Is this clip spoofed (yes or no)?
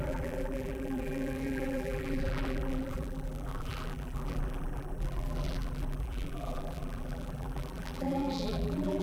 yes